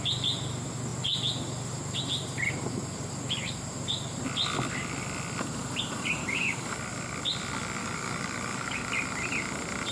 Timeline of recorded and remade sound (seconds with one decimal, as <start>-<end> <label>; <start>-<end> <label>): 0.0-6.2 recorded; 6.2-7.2 remade; 7.2-7.8 recorded; 7.8-8.9 remade; 8.9-9.9 recorded